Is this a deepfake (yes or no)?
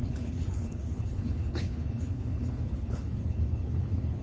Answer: yes